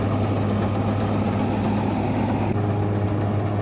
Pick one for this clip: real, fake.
real